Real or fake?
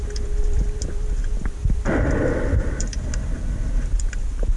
fake